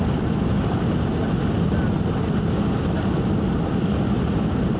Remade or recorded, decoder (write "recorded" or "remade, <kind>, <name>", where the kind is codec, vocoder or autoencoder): recorded